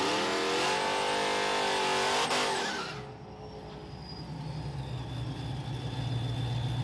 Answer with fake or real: real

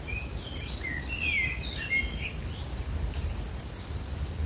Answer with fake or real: real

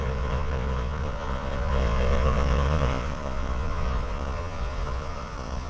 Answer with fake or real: fake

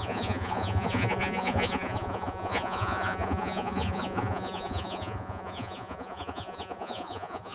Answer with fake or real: fake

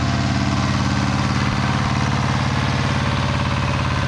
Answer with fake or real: real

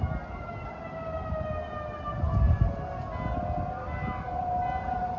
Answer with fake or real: real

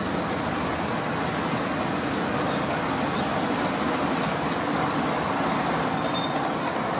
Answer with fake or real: real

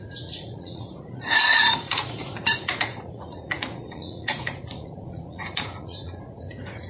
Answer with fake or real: fake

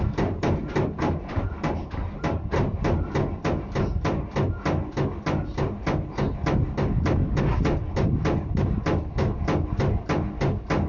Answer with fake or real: real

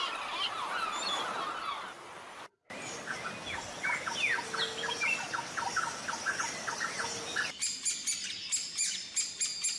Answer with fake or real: real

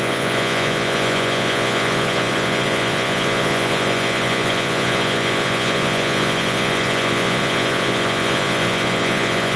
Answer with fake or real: fake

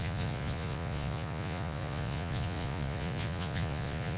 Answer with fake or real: fake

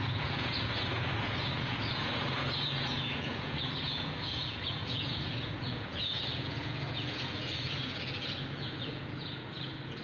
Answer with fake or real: fake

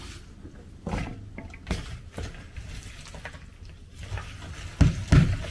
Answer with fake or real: real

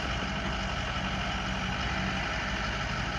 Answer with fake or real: real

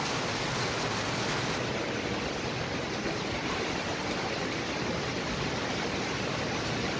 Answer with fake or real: real